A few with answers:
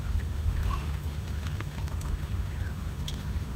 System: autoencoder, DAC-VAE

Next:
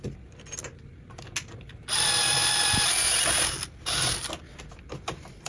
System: none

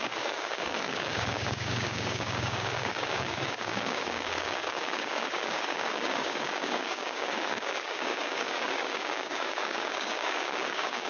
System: codec, DAC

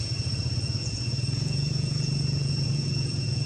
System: vocoder, Vocos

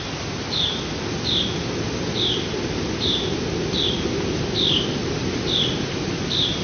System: none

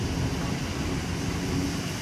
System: none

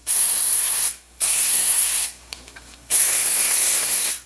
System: codec, SNAC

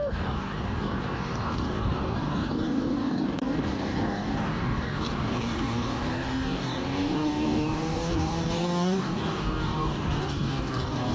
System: codec, DAC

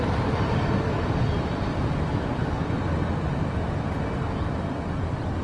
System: none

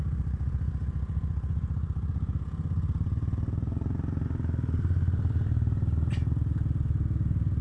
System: none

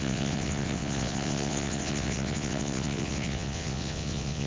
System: vocoder, WaveNeXt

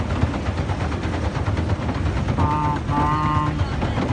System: none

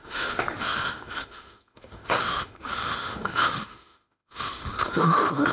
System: autoencoder, DAC-VAE